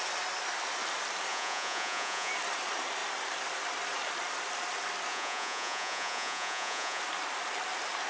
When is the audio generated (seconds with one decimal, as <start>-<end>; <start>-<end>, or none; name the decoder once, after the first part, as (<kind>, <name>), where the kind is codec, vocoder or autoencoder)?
1.3-2.3 (vocoder, Vocos); 5.1-7.0